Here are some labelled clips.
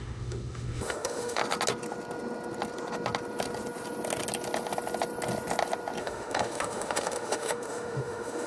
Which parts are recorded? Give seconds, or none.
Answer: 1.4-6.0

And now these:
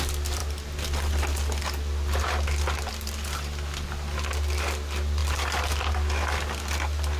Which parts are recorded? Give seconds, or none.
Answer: 0.0-7.2

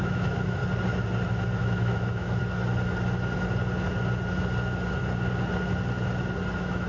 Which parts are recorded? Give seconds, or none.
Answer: 0.6-1.6; 2.4-6.5

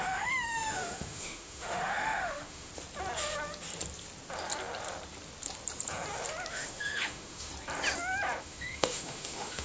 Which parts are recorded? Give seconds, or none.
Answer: 2.7-6.5; 7.5-8.4

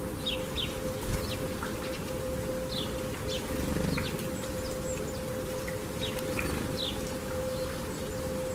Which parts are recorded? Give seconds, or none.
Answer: 0.0-7.2; 7.7-8.5

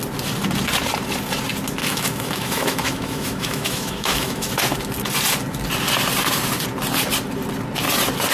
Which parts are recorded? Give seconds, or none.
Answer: 0.0-1.8; 4.5-8.3